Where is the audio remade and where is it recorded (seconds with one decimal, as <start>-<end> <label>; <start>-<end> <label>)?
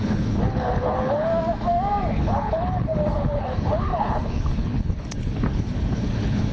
0.0-1.3 remade; 1.3-2.1 recorded; 2.1-6.5 remade